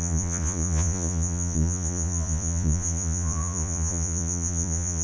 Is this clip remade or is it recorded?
remade